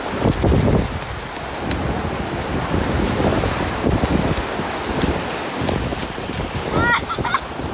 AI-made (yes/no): no